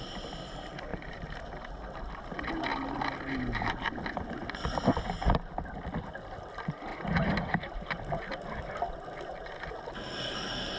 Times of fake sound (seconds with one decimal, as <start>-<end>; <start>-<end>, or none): 0.9-1.7; 6.9-8.2